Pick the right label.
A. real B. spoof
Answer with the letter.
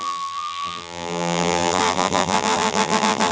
B